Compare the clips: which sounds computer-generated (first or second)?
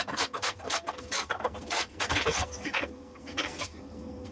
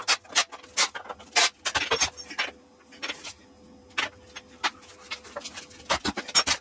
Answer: first